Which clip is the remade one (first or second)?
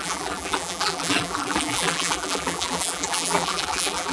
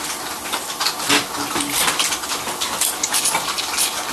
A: first